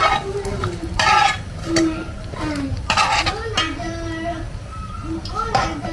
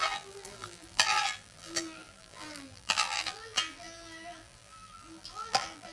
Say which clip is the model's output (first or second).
second